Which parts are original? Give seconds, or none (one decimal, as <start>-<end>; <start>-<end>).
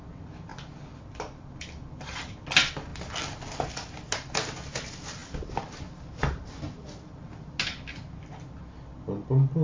0.0-9.6